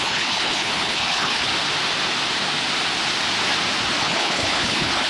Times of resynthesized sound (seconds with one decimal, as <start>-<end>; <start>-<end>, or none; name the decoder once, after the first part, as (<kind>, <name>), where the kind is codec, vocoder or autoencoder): 0.0-1.5 (codec, HILCodec); 4.0-5.1